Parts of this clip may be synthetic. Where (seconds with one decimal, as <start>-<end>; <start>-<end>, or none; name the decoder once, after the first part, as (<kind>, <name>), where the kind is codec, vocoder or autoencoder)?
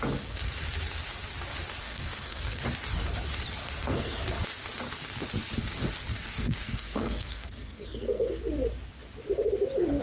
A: 1.8-2.6 (codec, SNAC); 3.6-4.2; 6.2-8.4